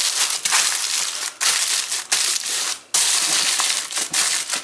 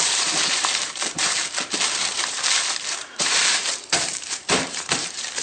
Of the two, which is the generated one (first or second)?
second